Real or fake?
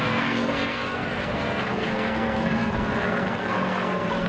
fake